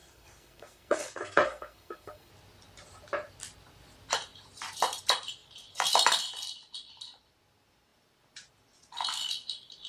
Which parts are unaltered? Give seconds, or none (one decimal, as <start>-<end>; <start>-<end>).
2.3-9.9